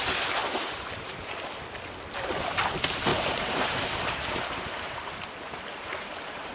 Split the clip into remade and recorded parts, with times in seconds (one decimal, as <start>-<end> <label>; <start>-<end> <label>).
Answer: 0.0-0.4 recorded; 0.4-1.3 remade; 1.3-3.1 recorded; 3.1-5.1 remade; 5.1-5.9 recorded; 5.9-6.5 remade